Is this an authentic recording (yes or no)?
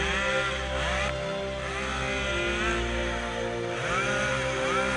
yes